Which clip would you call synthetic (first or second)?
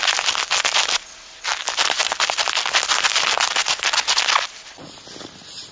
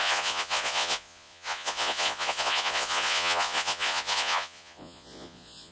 second